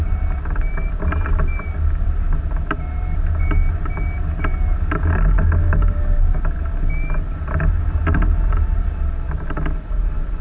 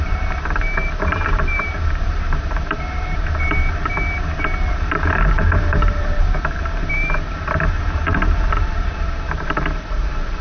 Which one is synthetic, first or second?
second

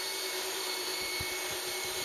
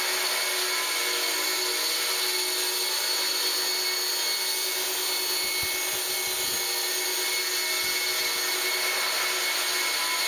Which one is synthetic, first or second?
first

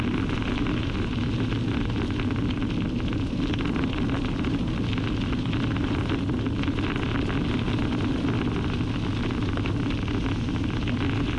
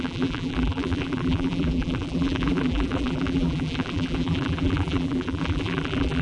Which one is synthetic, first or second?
second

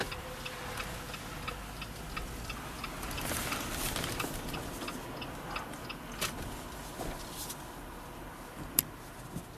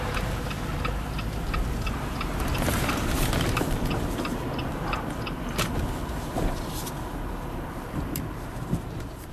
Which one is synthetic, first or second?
second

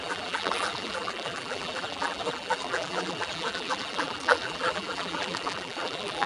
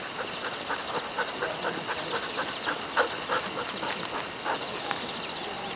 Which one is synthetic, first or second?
first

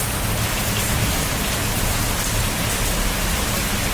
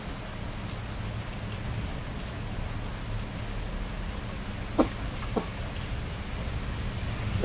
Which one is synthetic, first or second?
first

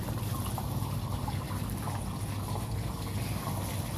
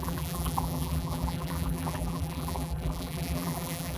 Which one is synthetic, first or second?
second